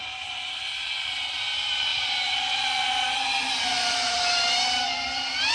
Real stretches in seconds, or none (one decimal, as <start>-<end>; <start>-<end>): 0.0-1.9